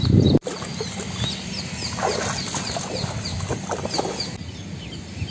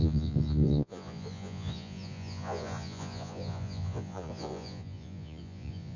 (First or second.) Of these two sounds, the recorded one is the first